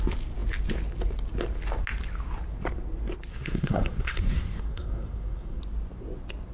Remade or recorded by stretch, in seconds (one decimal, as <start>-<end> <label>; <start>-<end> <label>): 0.0-3.3 recorded; 3.3-5.6 remade; 5.6-6.5 recorded